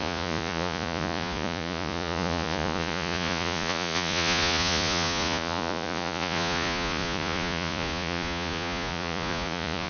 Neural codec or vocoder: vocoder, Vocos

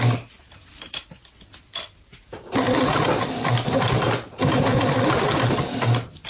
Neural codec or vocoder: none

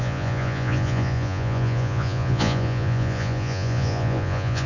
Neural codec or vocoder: vocoder, Vocos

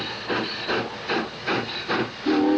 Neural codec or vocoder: none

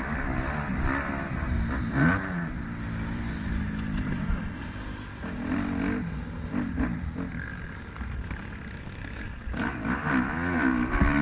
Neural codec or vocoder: none